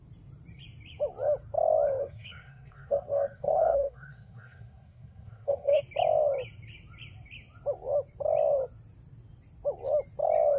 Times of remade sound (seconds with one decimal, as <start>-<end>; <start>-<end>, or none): 2.0-5.8